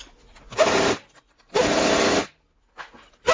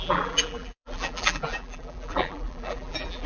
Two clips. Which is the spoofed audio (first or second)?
second